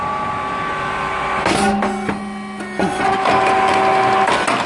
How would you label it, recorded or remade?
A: recorded